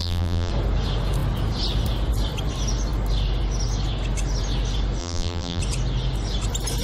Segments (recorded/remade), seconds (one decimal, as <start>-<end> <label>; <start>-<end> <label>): 0.0-0.5 remade; 0.5-5.0 recorded; 5.0-5.6 remade; 5.6-6.8 recorded